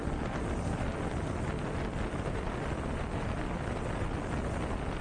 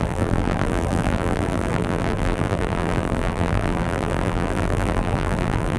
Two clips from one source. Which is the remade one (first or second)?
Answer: second